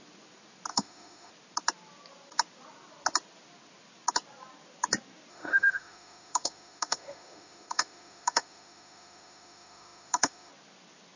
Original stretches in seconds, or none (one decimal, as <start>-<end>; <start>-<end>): 0.0-0.7; 1.3-5.3; 10.5-11.2